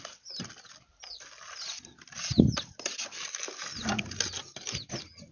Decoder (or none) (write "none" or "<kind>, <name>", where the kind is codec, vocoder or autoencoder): none